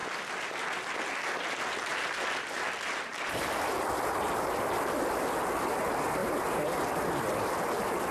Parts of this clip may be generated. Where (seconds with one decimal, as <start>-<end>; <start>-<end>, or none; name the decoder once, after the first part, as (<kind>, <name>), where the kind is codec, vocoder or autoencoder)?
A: none